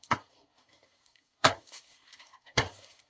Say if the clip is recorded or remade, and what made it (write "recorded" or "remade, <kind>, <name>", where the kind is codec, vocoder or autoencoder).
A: remade, codec, SNAC